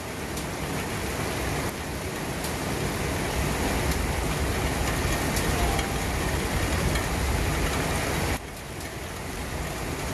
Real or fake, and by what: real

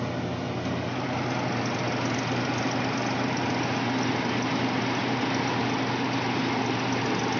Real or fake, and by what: real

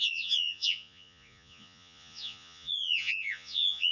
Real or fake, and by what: fake, vocoder, Vocos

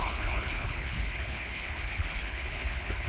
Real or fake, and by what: fake, codec, HILCodec